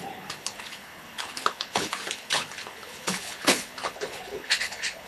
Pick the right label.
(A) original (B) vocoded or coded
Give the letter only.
B